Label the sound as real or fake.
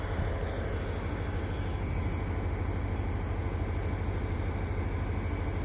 real